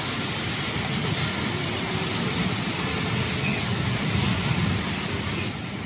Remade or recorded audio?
recorded